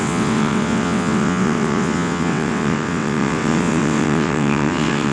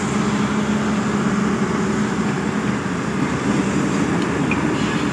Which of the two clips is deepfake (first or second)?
first